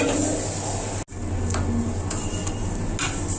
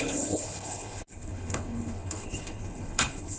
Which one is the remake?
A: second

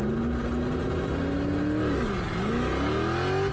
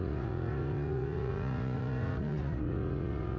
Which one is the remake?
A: second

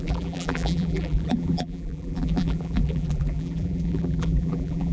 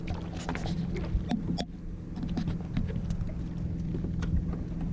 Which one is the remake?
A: first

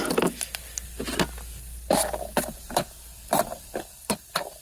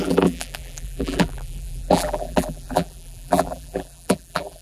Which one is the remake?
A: second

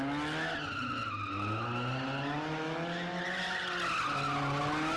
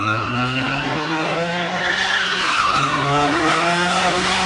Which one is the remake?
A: second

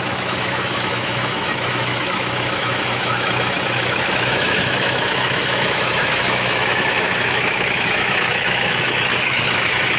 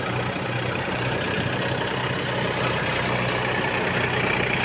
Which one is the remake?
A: first